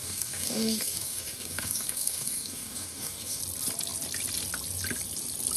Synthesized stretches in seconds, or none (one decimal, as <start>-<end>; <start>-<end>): 0.0-3.4